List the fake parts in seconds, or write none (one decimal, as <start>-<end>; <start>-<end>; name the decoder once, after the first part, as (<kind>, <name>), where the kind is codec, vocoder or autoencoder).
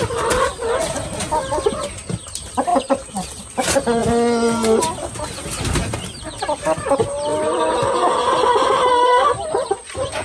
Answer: none